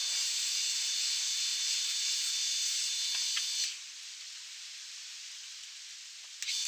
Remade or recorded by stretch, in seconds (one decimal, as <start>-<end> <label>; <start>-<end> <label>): 0.0-0.9 remade; 0.9-1.5 recorded; 1.5-4.4 remade; 4.4-6.7 recorded